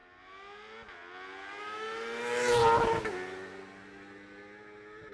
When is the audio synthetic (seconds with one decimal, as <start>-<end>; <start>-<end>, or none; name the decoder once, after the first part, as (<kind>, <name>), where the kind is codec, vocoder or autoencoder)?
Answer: 1.6-2.6 (autoencoder, DAC-VAE)